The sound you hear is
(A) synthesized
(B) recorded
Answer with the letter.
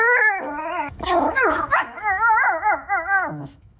A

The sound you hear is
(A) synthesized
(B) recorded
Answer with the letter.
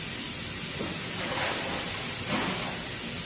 B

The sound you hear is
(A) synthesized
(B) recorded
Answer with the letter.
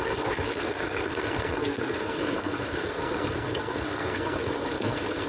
A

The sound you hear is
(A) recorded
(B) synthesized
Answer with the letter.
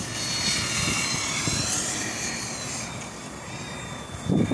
A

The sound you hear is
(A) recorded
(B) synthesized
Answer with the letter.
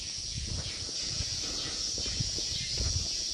B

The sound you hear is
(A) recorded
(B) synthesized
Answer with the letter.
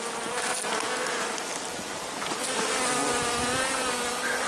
A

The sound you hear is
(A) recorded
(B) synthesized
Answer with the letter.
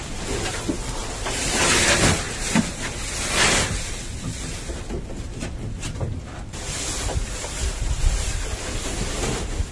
A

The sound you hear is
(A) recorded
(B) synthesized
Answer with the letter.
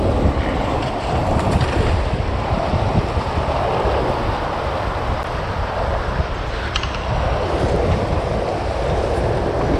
B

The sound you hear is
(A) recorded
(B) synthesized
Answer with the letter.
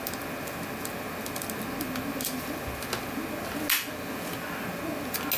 A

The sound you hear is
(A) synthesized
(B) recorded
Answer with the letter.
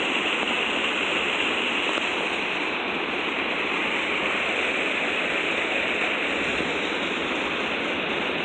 B